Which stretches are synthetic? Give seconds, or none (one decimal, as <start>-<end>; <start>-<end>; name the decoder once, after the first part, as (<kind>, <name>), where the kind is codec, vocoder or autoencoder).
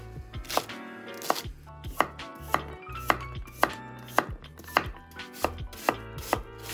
none